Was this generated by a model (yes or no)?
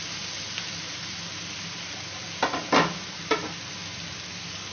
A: no